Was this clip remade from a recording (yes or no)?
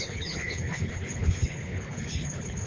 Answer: yes